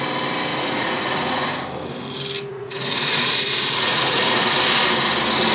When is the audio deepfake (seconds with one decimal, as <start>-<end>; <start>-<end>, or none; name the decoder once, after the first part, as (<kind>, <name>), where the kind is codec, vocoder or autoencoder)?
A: 0.5-1.5 (vocoder, Vocos); 2.5-4.5